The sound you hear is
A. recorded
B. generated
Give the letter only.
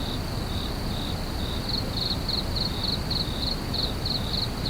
A